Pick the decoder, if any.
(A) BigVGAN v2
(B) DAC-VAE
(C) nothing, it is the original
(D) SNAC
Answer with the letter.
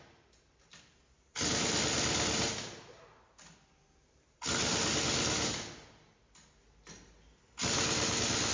C